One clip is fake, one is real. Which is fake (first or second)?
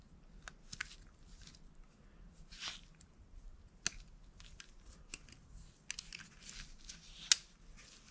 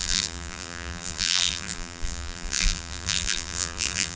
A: second